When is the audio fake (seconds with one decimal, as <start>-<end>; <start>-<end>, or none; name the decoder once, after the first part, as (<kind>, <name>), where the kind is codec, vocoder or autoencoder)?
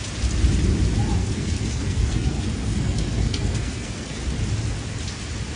1.2-4.2 (codec, SNAC)